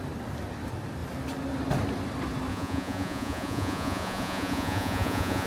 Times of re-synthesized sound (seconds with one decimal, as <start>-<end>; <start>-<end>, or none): 2.5-5.5